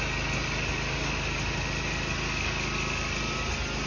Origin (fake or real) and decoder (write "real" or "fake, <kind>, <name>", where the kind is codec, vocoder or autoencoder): real